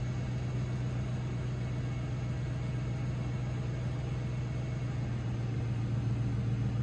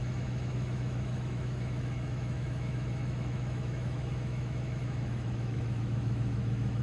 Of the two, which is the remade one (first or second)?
second